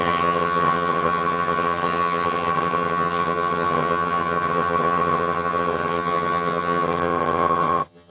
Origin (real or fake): fake